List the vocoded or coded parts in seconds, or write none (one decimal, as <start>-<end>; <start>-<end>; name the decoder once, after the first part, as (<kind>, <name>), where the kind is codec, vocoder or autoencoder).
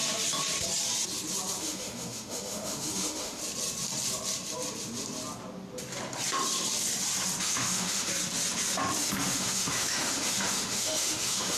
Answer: 1.6-3.4 (autoencoder, DAC-VAE); 7.4-8.1; 9.0-11.6